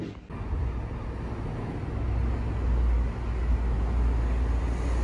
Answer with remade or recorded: recorded